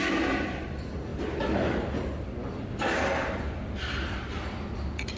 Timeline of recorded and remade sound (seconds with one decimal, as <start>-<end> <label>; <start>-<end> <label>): 0.0-5.2 recorded